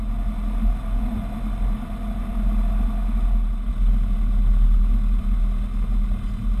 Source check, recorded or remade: recorded